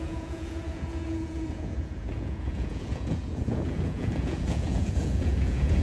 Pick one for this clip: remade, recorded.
remade